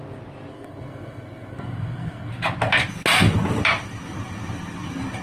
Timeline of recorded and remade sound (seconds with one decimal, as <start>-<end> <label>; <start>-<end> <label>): 0.0-0.5 recorded; 0.5-2.3 remade; 2.3-5.2 recorded